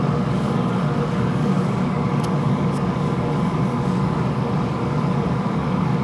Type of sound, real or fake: fake